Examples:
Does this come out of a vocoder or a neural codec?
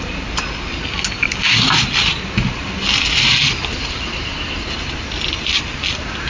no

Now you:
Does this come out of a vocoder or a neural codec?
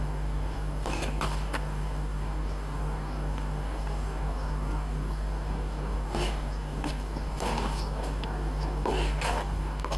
yes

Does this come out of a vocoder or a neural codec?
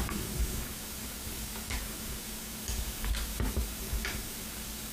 yes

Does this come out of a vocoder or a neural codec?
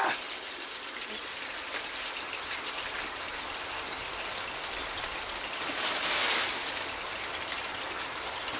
no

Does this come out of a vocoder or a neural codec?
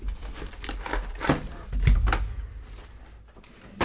no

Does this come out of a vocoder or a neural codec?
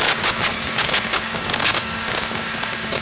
yes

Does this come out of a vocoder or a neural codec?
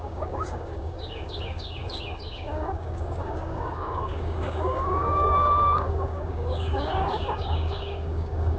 yes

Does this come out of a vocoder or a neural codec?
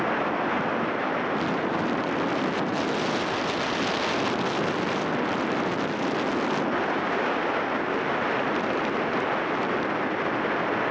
no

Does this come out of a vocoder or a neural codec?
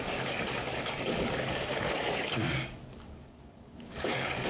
yes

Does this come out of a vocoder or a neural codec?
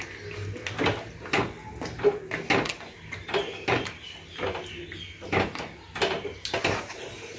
no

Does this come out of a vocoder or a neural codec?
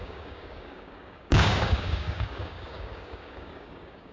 yes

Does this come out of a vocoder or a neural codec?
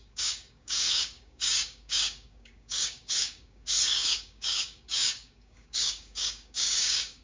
yes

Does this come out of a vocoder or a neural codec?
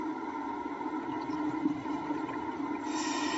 no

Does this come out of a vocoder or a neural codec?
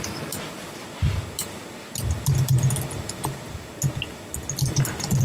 no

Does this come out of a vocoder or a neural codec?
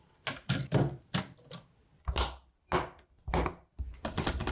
no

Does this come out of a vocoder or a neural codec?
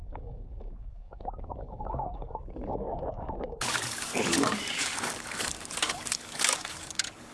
yes